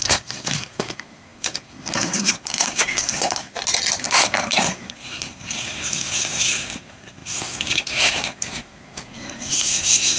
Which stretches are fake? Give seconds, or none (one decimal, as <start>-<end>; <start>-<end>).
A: 0.0-3.5; 4.0-10.2